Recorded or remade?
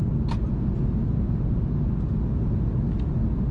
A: recorded